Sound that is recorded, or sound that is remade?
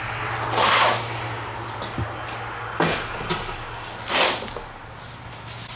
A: recorded